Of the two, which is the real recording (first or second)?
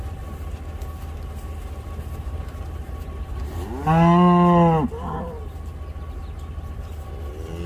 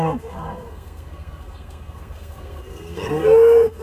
first